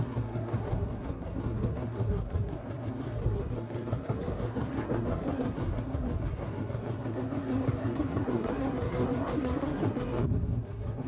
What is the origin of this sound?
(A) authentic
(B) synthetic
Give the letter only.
B